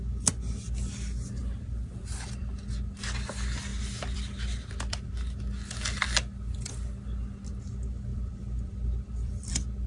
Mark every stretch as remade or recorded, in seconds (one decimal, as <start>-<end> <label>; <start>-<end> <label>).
0.0-1.4 recorded; 1.4-2.7 remade; 2.7-3.7 recorded; 3.7-5.4 remade; 5.4-8.1 recorded; 8.1-9.5 remade; 9.5-9.9 recorded